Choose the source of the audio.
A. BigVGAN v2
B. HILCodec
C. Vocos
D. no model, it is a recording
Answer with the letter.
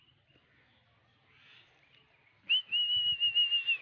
D